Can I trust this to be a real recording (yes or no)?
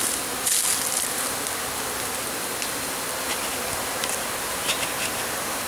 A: no